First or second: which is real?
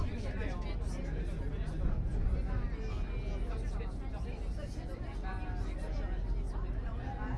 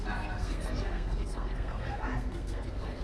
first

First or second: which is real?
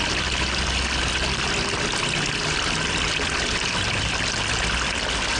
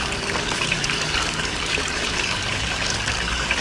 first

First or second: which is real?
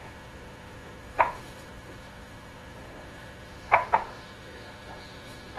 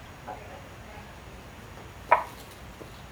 second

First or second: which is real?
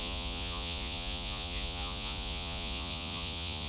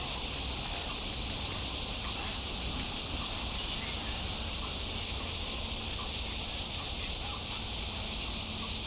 second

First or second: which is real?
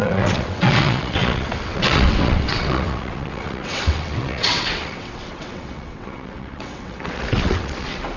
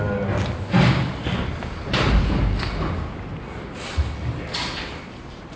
second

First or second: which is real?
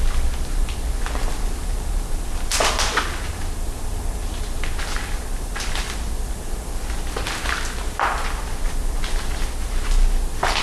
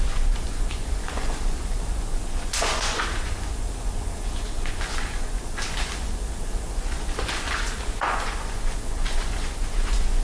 first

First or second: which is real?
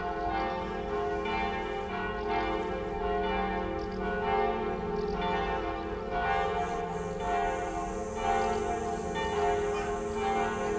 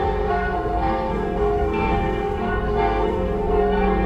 first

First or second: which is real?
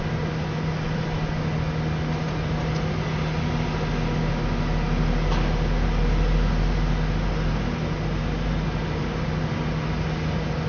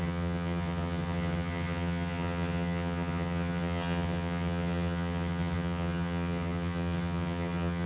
first